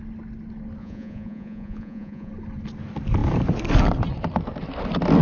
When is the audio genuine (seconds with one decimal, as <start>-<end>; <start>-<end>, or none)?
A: 0.0-0.8; 2.3-5.2